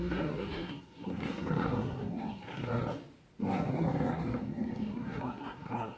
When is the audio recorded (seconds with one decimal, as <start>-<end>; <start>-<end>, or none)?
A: 2.8-3.4

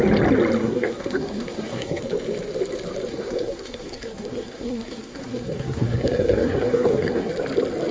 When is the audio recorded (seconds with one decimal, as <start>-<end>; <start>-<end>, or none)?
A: 0.0-0.6; 2.0-3.1; 7.3-7.9

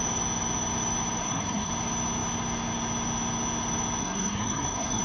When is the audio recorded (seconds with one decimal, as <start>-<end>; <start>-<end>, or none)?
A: 0.0-1.2; 1.7-4.0

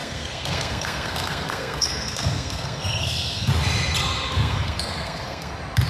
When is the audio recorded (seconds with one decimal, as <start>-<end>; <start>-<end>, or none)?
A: 3.5-4.3; 5.5-5.9

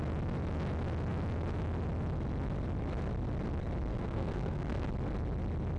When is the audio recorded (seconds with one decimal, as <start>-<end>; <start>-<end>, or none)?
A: 0.0-3.9; 4.8-5.8